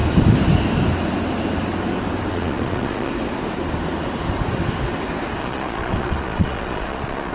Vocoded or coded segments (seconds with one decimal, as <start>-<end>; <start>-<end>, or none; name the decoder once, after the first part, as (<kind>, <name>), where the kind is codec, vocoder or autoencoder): 2.3-3.1 (vocoder, Vocos); 5.4-7.3